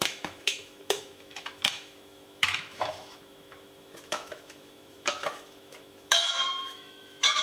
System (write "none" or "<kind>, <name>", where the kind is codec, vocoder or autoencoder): autoencoder, DAC-VAE